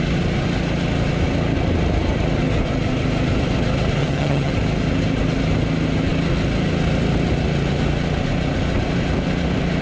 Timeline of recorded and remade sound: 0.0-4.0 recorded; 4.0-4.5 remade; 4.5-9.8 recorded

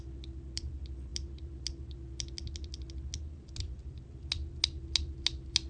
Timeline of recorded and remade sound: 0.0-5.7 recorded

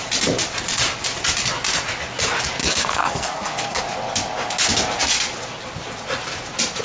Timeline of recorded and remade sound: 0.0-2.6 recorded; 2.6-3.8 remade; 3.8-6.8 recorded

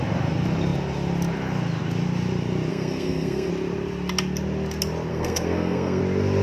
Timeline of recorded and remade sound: 0.0-2.7 recorded; 2.7-3.5 remade; 3.5-5.1 recorded; 5.1-6.0 remade; 6.0-6.4 recorded